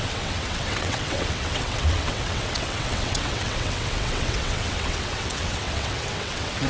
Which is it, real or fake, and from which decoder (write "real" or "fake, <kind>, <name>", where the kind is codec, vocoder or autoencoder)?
fake, vocoder, WaveNeXt